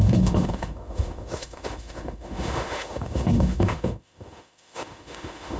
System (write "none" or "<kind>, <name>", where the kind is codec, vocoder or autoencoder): autoencoder, DAC-VAE